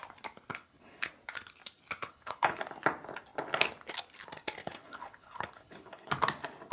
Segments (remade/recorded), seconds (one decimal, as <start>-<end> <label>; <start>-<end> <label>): 0.0-0.5 recorded; 0.5-1.1 remade; 1.1-2.0 recorded; 2.0-2.6 remade; 2.6-4.6 recorded; 4.6-6.1 remade; 6.1-6.7 recorded